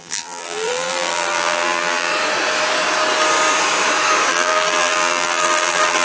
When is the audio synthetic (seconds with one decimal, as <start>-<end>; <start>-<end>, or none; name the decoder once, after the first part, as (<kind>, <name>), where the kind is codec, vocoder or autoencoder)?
0.0-2.1 (vocoder, BigVGAN v2); 4.3-6.0